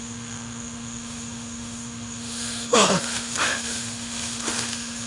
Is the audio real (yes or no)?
no